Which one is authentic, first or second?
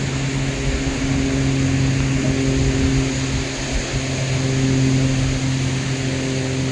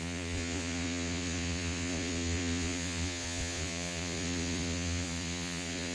first